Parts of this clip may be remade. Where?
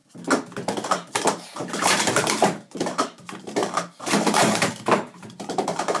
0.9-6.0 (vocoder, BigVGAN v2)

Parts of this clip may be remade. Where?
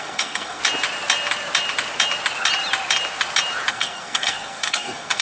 0.0-0.6 (codec, SNAC); 3.7-5.2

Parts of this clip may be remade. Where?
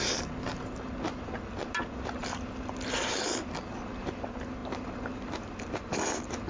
none